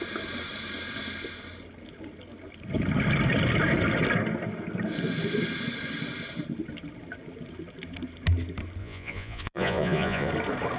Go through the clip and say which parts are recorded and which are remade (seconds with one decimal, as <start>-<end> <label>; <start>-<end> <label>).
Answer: 0.0-8.8 recorded; 8.8-10.3 remade; 10.3-10.8 recorded